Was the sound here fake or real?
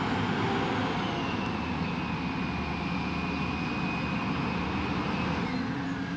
real